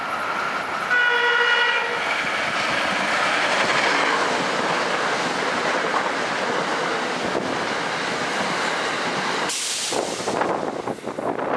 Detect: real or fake real